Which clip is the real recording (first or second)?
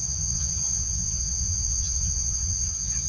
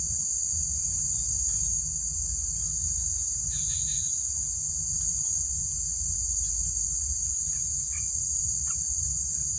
second